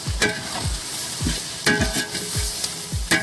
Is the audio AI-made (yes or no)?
no